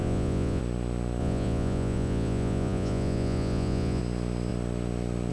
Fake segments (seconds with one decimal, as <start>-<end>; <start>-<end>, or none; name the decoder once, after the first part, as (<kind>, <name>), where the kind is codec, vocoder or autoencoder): 0.0-0.6 (vocoder, Vocos); 1.2-4.0